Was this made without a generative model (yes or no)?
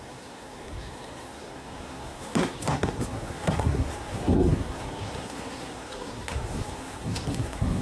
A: no